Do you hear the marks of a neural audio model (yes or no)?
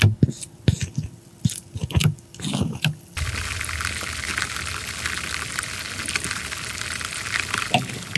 no